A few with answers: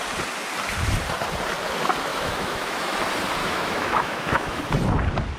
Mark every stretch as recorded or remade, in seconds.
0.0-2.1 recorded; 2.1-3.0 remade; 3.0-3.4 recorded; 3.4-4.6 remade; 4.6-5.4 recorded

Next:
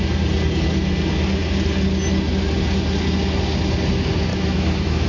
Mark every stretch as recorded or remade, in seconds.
0.0-4.3 recorded; 4.3-5.1 remade

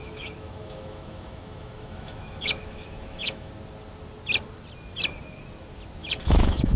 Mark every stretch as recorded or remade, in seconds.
0.0-3.5 remade; 3.5-6.0 recorded; 6.0-6.8 remade

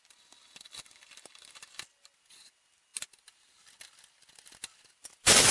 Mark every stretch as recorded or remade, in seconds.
0.0-5.5 recorded

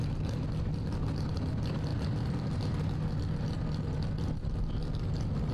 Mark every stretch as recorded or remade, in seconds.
0.0-5.5 recorded